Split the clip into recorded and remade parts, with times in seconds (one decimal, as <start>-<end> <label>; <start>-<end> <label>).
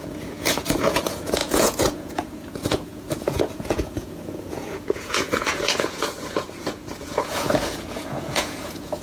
0.0-9.0 remade